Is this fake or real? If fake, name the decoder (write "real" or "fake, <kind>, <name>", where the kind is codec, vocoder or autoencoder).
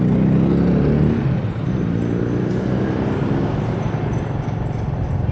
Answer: real